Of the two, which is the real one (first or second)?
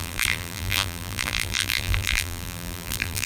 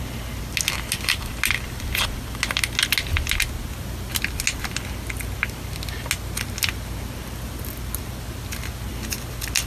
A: second